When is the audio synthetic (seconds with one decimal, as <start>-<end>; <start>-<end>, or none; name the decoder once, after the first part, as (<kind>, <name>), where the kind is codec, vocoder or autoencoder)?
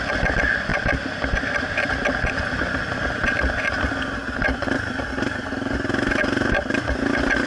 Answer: 0.7-2.8 (vocoder, BigVGAN v2)